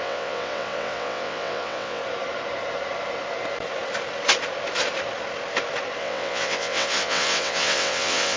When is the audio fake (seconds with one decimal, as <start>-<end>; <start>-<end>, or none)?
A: 0.0-2.0; 6.0-8.4